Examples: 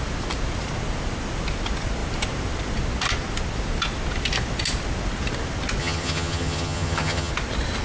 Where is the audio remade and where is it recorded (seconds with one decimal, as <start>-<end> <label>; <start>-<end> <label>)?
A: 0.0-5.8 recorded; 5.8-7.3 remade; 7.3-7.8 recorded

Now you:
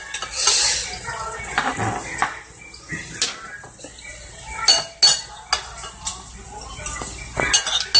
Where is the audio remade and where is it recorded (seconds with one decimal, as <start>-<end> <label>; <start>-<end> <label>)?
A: 0.0-8.0 recorded

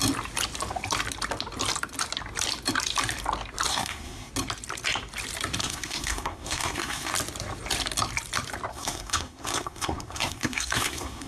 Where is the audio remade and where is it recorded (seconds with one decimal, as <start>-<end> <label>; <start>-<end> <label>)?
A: 0.0-3.7 recorded; 3.7-4.3 remade; 4.3-5.6 recorded; 5.6-7.1 remade; 7.1-8.7 recorded; 8.7-11.3 remade